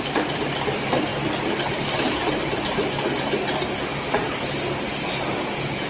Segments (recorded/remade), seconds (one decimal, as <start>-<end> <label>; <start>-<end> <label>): 0.0-4.9 recorded; 4.9-5.9 remade